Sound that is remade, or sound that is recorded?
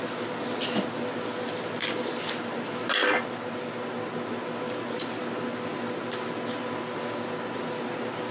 recorded